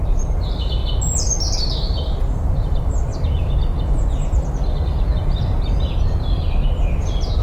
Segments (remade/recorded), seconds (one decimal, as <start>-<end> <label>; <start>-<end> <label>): 0.0-0.8 remade; 0.8-1.6 recorded; 1.6-3.1 remade; 3.1-7.4 recorded